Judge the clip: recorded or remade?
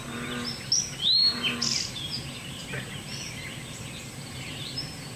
recorded